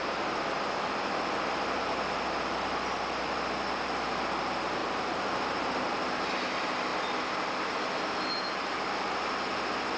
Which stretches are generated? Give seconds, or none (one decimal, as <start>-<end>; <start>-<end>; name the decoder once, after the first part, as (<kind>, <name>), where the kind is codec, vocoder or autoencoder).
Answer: none